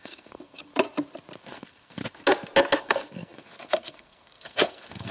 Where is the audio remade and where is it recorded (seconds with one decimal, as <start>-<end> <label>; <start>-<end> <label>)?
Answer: 0.0-0.7 remade; 0.7-1.4 recorded; 1.4-2.0 remade; 2.0-2.8 recorded; 2.8-5.1 remade